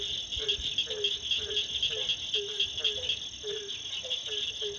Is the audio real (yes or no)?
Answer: yes